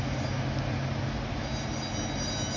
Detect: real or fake real